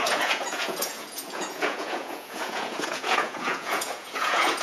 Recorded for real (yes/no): no